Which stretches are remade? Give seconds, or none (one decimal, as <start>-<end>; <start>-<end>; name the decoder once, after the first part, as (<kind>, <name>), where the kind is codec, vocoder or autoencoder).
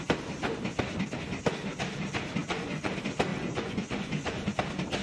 2.4-2.9 (vocoder, Vocos); 3.3-4.5